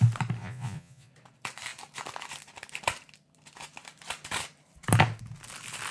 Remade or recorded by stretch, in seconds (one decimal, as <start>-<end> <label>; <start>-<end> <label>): 0.0-0.4 recorded; 0.4-1.1 remade; 1.1-5.9 recorded